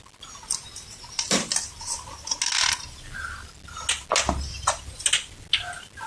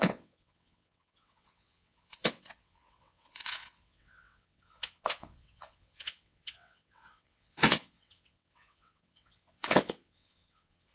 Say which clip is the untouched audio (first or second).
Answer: first